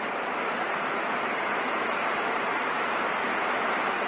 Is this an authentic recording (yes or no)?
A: yes